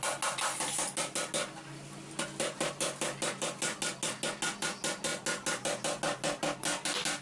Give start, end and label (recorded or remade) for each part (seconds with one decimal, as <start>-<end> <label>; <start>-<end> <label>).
0.0-7.2 recorded

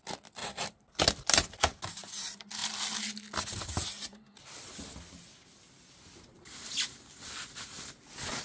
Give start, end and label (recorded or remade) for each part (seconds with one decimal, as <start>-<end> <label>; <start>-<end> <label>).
0.0-8.4 recorded

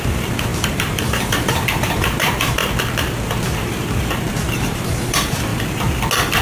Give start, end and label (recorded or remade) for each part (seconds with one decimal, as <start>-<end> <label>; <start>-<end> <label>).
0.0-2.6 remade; 2.6-4.3 recorded; 4.3-5.5 remade; 5.5-6.4 recorded